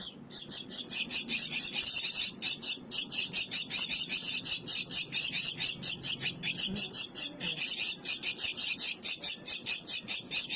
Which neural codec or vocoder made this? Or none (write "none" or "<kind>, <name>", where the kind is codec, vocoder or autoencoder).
none